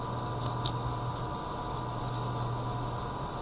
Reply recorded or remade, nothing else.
recorded